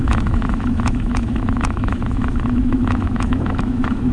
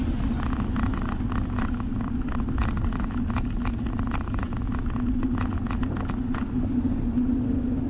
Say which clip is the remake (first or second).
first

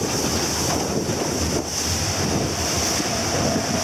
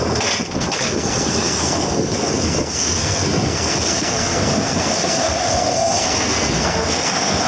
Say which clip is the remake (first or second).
second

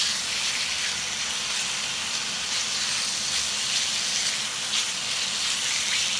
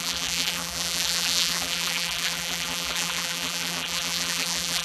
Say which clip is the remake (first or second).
second